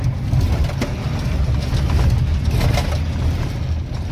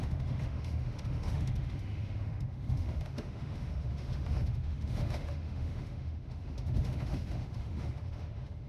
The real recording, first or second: first